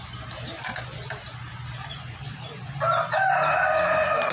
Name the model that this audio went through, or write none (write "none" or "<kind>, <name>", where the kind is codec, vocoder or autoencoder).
none